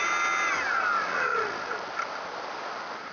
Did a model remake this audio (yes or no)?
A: no